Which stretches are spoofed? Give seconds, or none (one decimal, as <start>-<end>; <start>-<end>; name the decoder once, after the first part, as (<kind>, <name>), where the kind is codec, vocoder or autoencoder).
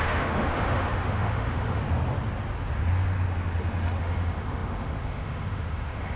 0.0-1.8 (autoencoder, DAC-VAE); 4.0-6.2